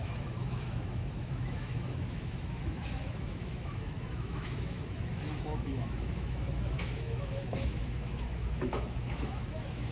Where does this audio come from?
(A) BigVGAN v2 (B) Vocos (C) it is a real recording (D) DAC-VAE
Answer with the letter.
D